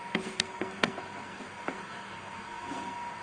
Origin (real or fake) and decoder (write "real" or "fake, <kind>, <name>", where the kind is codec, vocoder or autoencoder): fake, codec, SNAC